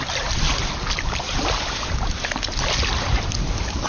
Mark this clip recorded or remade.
recorded